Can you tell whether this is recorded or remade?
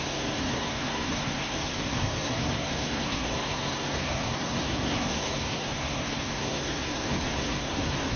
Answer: remade